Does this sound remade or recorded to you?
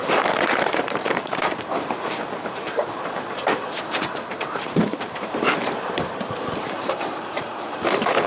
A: remade